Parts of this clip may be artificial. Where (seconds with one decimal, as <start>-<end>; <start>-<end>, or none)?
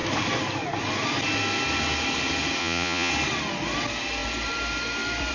2.6-3.1